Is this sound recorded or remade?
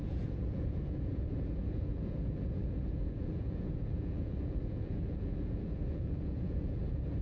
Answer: remade